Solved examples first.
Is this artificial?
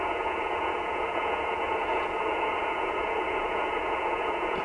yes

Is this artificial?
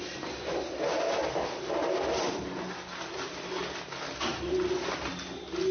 no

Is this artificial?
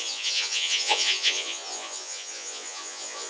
yes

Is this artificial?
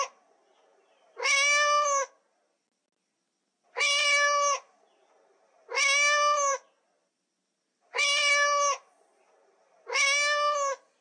no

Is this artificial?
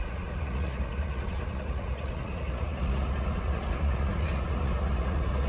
yes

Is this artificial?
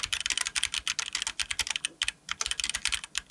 no